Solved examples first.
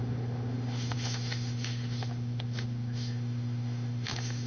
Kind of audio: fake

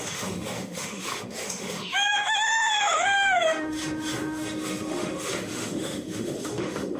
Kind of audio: fake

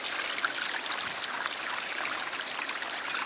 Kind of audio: real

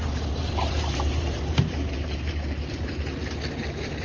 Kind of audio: fake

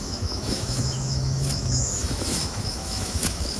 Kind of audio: fake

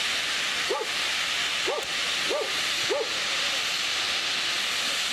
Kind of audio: real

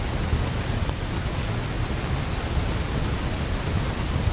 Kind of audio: real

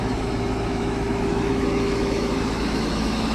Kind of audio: fake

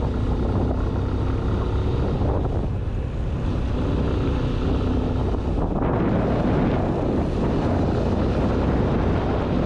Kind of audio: real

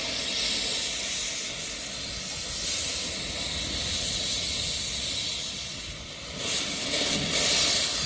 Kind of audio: real